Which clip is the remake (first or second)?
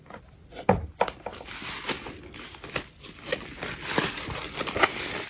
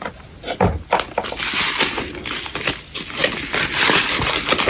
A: first